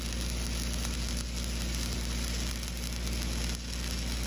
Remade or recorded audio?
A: recorded